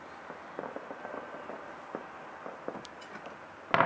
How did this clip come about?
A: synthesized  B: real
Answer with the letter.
B